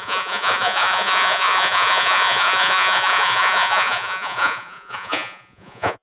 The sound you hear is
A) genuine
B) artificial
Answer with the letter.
B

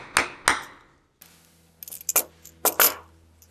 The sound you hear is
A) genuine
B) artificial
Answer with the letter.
A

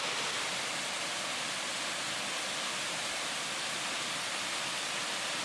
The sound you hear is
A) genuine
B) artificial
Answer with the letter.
A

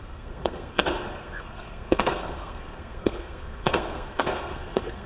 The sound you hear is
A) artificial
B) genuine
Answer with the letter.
A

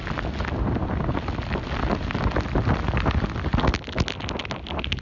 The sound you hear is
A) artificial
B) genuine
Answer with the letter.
B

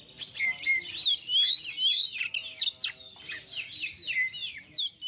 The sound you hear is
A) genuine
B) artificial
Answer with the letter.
A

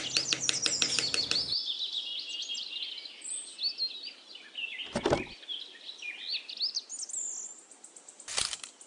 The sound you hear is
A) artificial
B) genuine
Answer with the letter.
B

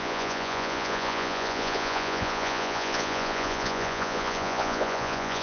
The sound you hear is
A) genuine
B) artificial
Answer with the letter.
B